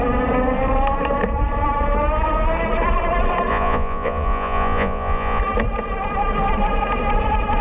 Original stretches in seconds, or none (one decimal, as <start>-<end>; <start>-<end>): 0.0-3.5; 5.4-7.6